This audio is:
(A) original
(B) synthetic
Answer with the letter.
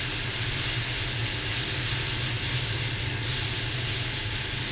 A